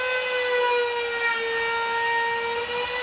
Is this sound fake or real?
real